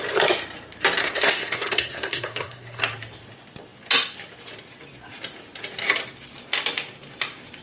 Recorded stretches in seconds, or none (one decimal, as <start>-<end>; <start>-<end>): 0.0-1.0; 2.8-7.6